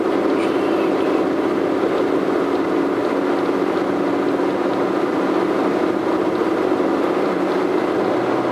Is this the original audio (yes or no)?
yes